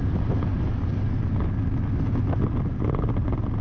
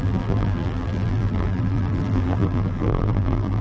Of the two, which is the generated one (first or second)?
second